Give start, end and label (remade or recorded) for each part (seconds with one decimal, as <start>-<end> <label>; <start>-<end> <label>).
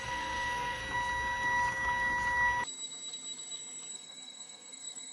0.0-0.8 remade; 0.8-3.9 recorded; 3.9-5.1 remade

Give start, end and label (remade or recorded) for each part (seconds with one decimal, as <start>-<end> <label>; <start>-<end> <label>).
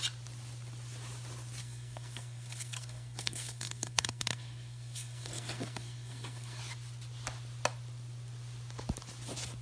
0.0-1.6 recorded; 1.6-6.6 remade; 6.6-9.6 recorded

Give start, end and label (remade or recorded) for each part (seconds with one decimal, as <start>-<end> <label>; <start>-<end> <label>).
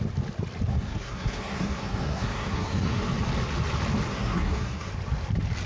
0.0-0.7 recorded; 0.7-3.0 remade; 3.0-4.1 recorded; 4.1-4.9 remade; 4.9-5.7 recorded